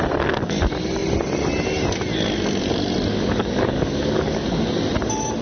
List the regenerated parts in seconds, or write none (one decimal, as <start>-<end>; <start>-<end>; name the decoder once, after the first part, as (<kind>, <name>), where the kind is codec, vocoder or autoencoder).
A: 3.1-4.7 (codec, DAC)